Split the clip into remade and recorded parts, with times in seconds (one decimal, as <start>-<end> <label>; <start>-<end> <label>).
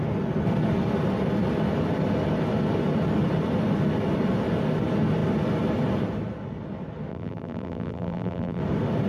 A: 0.0-7.1 recorded; 7.1-8.6 remade; 8.6-9.1 recorded